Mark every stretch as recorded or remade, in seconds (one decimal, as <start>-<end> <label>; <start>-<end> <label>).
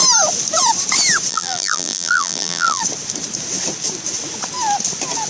0.0-1.3 recorded; 1.3-2.8 remade; 2.8-5.3 recorded